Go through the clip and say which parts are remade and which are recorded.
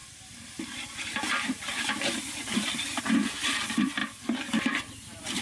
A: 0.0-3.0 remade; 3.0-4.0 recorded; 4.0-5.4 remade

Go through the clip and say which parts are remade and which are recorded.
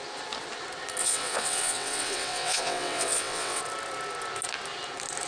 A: 0.0-1.0 recorded; 1.0-3.6 remade; 3.6-5.3 recorded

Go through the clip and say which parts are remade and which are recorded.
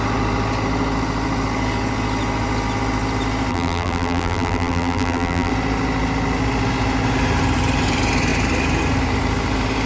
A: 0.0-3.5 recorded; 3.5-5.5 remade; 5.5-9.9 recorded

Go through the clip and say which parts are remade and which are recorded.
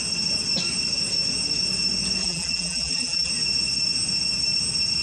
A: 0.0-2.2 recorded; 2.2-3.3 remade; 3.3-5.0 recorded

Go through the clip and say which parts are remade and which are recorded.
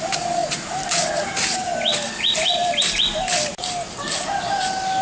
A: 0.0-1.7 remade; 1.7-5.0 recorded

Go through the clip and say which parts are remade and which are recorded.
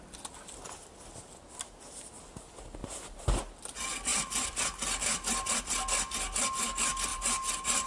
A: 0.0-2.8 recorded; 2.8-3.4 remade; 3.4-4.1 recorded; 4.1-5.6 remade; 5.6-7.1 recorded; 7.1-7.9 remade